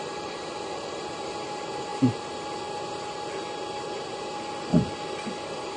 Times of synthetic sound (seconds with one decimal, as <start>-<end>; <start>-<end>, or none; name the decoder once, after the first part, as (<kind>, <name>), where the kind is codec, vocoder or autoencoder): 0.0-1.9 (vocoder, BigVGAN v2); 4.3-4.7